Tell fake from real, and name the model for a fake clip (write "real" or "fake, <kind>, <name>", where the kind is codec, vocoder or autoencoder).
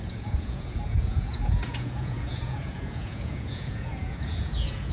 fake, vocoder, Vocos